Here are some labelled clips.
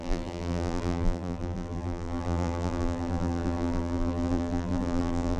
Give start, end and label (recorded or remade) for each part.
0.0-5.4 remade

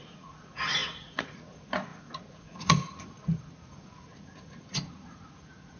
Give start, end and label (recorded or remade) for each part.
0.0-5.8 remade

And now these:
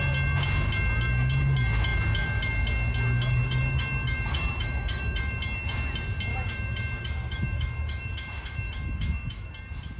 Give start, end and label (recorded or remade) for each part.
0.0-3.4 recorded; 3.4-5.4 remade; 5.4-6.3 recorded; 6.3-9.5 remade; 9.5-10.0 recorded

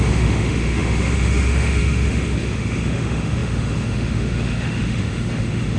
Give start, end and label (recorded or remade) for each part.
0.0-5.8 remade

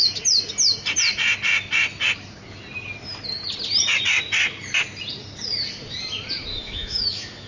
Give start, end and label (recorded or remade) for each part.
0.0-6.5 recorded; 6.5-7.5 remade

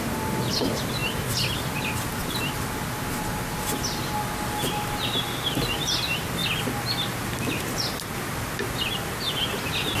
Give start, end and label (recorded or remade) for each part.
0.0-10.0 recorded

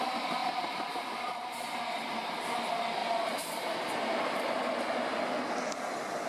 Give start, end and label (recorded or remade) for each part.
0.0-3.0 recorded; 3.0-4.6 remade; 4.6-6.3 recorded

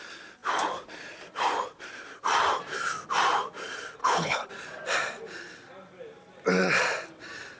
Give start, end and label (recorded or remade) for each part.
0.0-4.0 recorded; 4.0-4.5 remade; 4.5-7.6 recorded